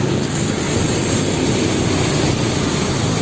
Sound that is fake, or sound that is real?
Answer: real